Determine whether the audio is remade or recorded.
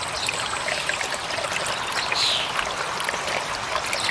recorded